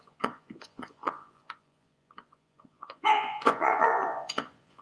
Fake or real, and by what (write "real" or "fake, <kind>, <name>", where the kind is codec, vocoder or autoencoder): fake, vocoder, Vocos